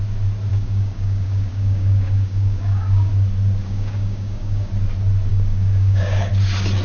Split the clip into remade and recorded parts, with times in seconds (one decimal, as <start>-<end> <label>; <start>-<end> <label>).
0.0-0.5 recorded; 0.5-3.1 remade; 3.1-3.6 recorded; 3.6-4.7 remade; 4.7-5.3 recorded; 5.3-6.3 remade; 6.3-6.8 recorded